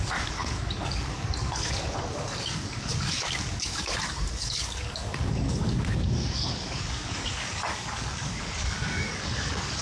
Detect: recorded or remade remade